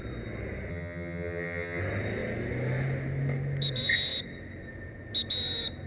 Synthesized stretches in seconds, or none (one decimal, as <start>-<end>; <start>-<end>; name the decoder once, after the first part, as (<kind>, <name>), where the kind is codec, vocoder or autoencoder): 0.7-1.8 (vocoder, HiFi-GAN)